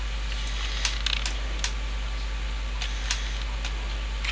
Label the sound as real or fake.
real